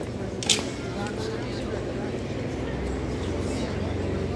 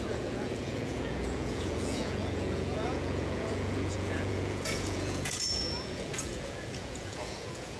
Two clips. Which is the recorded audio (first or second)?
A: first